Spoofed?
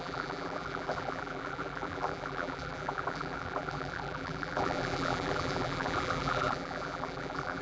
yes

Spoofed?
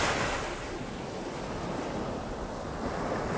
no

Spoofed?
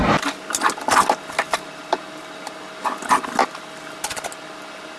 no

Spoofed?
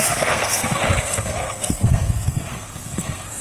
yes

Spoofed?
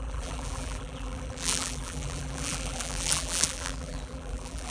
yes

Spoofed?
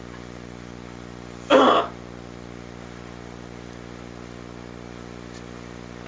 yes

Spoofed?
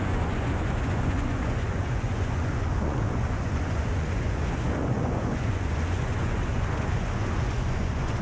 yes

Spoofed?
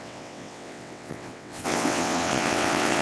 yes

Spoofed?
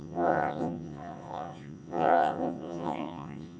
yes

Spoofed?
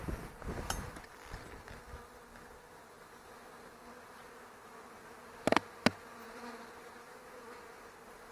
no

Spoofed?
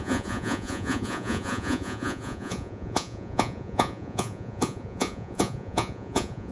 yes